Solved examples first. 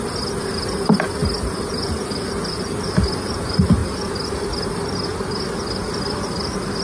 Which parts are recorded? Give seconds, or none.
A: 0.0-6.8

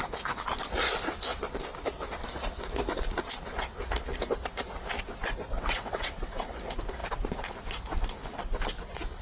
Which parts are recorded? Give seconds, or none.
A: 0.0-5.5; 6.6-9.2

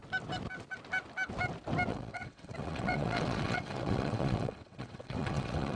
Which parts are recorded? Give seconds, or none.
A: 0.0-1.9

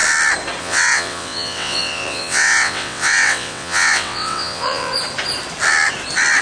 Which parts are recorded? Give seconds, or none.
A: 0.0-0.6; 4.9-6.4

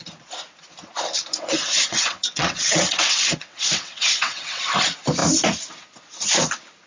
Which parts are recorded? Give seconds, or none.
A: 0.0-1.3; 4.6-6.9